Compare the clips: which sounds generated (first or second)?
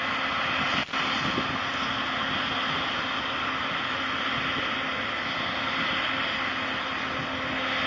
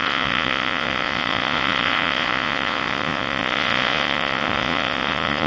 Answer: second